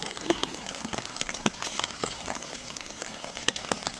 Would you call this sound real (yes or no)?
no